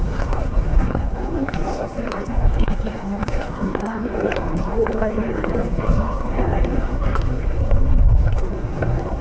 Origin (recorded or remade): remade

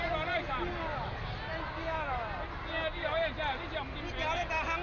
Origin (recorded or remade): recorded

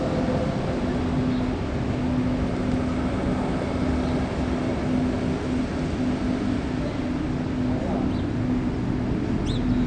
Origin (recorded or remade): recorded